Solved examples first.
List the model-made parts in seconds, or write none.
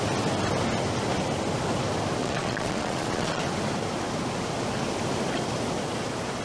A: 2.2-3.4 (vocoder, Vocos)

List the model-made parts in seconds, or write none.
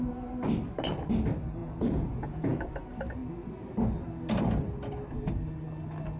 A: 1.6-2.6 (vocoder, Vocos)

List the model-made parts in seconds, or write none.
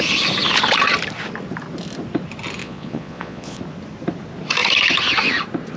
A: 2.6-3.6 (vocoder, Vocos)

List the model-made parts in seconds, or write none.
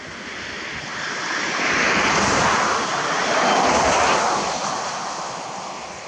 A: none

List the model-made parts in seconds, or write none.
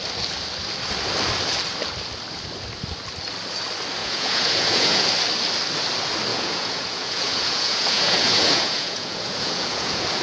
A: 4.0-5.1 (vocoder, Vocos); 6.3-10.2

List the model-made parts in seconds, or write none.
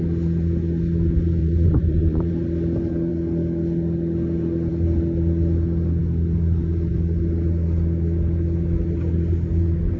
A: 1.4-2.3 (vocoder, Vocos)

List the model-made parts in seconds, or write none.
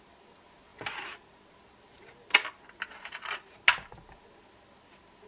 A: none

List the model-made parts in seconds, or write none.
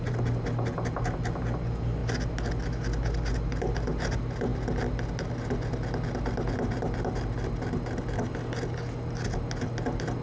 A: none